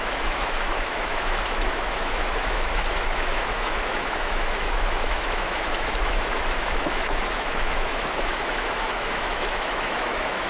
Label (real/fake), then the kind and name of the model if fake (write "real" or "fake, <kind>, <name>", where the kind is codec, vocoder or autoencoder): fake, autoencoder, DAC-VAE